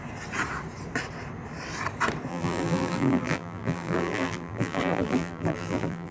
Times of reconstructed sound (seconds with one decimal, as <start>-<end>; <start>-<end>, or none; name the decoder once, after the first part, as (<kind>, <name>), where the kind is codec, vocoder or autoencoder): 2.3-6.1 (vocoder, BigVGAN v2)